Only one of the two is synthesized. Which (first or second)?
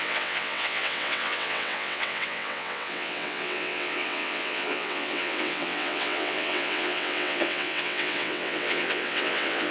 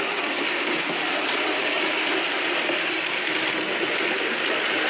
first